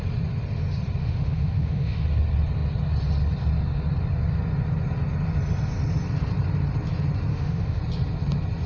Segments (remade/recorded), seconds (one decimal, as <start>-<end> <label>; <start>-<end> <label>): 0.0-1.0 recorded; 1.0-2.0 remade; 2.0-7.3 recorded; 7.3-7.8 remade; 7.8-8.7 recorded